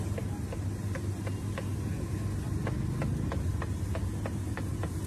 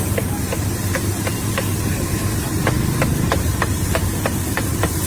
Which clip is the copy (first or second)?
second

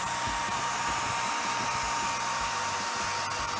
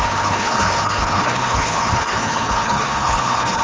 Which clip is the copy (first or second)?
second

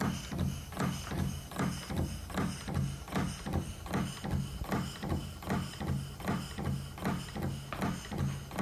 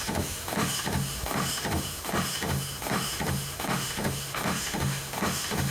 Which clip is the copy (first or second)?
second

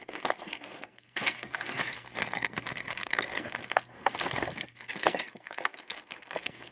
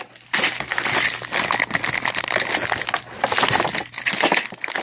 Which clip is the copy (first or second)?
first